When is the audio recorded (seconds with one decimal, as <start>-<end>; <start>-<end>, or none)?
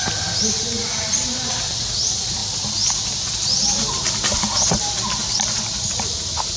0.0-2.4; 5.6-6.6